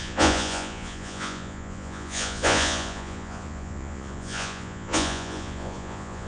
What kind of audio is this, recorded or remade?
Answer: remade